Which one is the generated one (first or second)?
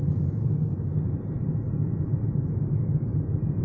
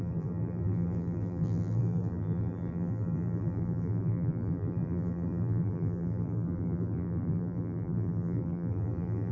second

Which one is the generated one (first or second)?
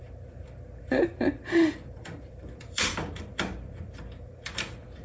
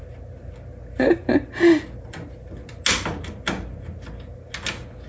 first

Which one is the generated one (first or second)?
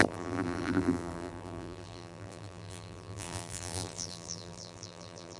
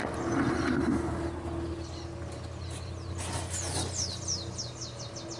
first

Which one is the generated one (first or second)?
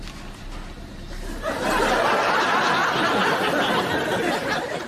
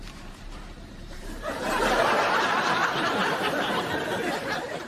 second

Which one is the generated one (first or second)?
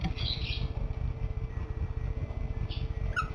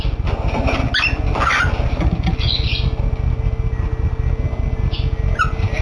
first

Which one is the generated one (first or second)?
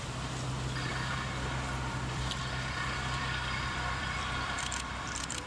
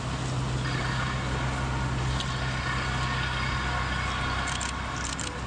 first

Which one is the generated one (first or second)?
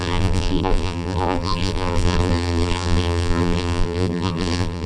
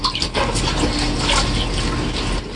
first